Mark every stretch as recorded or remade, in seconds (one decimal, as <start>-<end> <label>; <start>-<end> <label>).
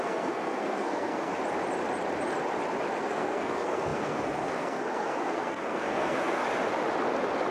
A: 0.0-1.3 remade; 1.3-3.0 recorded; 3.0-6.4 remade; 6.4-7.5 recorded